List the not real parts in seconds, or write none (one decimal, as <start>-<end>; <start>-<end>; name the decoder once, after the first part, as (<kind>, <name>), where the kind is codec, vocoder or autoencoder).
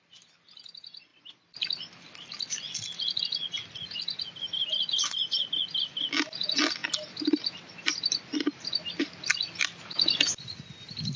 none